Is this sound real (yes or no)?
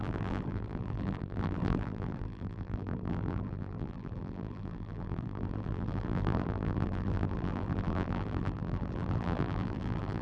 no